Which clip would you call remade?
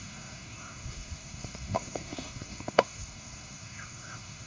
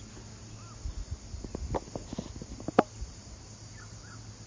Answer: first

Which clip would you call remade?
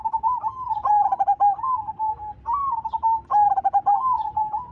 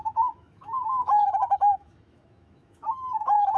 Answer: second